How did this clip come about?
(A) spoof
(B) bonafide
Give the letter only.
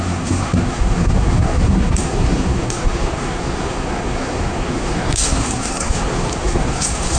A